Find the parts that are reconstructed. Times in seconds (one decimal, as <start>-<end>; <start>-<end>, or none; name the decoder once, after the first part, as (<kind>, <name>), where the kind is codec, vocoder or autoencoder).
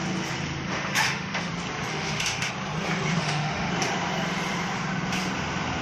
0.7-1.5 (autoencoder, DAC-VAE); 1.9-2.5; 3.2-3.7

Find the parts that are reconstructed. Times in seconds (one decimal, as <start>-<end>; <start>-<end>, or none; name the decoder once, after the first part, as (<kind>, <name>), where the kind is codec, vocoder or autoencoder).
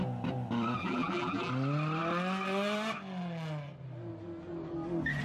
0.8-1.5 (vocoder, BigVGAN v2)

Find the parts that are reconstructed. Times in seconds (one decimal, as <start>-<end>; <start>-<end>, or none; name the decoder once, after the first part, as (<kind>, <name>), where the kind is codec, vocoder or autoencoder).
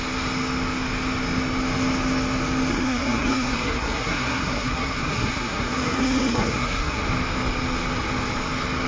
2.7-7.0 (codec, SNAC)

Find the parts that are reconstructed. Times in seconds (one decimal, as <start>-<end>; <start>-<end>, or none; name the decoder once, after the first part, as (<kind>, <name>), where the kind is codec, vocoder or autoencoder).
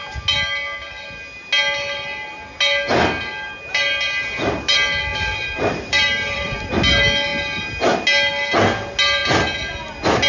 5.1-6.7 (vocoder, BigVGAN v2)